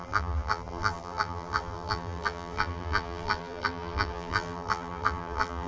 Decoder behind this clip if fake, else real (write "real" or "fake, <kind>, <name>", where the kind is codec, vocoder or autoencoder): fake, vocoder, BigVGAN v2